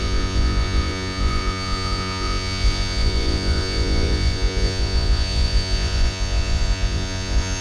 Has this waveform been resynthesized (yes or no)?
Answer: yes